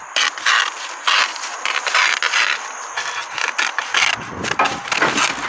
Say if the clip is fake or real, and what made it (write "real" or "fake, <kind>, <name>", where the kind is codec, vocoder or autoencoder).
real